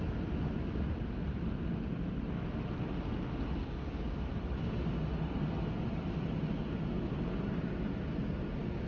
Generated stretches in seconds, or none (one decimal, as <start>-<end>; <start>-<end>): 3.6-4.2